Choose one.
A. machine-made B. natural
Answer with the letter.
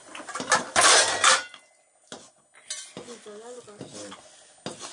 B